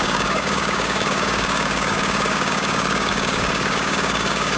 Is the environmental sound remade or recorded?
remade